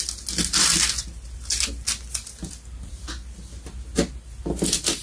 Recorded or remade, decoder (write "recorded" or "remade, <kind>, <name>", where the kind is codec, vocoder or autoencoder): recorded